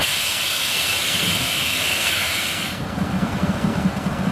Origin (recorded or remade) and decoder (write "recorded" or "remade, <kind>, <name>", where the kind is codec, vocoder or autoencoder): remade, codec, SNAC